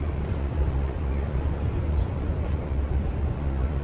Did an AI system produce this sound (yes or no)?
yes